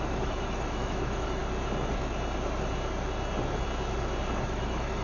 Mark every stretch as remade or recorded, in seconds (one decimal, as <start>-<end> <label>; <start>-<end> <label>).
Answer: 0.0-1.4 remade; 1.4-4.4 recorded; 4.4-5.0 remade